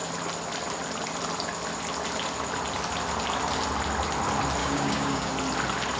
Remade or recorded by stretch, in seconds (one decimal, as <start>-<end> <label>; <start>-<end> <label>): 0.0-4.6 recorded; 4.6-5.3 remade; 5.3-6.0 recorded